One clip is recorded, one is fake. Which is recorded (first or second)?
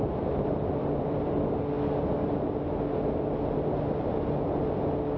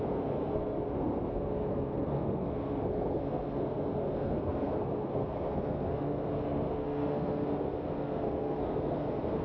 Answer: first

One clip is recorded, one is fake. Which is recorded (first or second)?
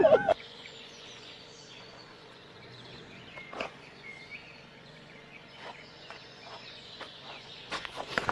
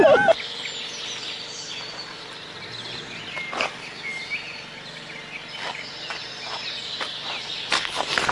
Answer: second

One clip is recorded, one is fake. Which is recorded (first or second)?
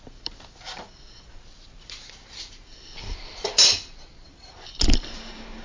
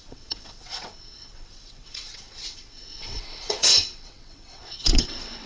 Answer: first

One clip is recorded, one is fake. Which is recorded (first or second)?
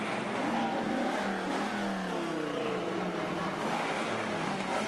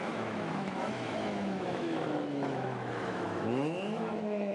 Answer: first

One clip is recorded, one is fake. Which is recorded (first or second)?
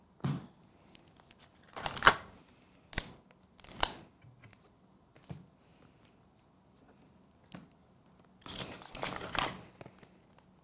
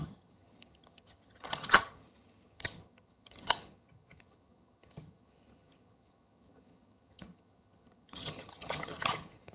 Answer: first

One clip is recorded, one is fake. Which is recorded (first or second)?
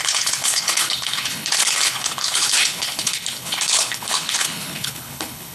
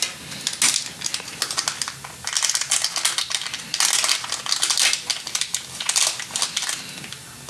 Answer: second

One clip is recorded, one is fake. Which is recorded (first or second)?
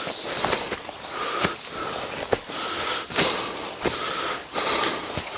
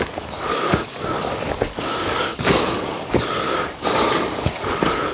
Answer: first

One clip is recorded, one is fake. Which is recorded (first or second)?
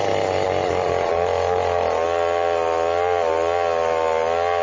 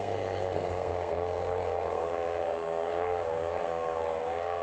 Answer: first